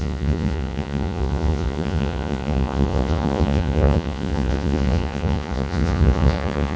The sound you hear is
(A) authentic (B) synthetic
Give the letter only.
B